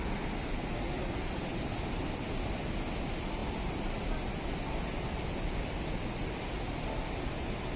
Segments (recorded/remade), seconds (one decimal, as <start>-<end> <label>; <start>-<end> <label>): 0.0-7.8 recorded